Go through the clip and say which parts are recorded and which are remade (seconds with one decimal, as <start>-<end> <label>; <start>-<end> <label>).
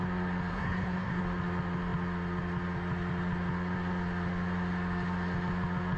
0.0-0.5 recorded; 0.5-1.2 remade; 1.2-6.0 recorded